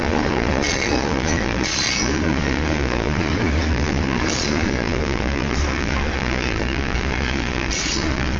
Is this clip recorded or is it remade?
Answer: remade